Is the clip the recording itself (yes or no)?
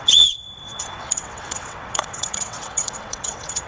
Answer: no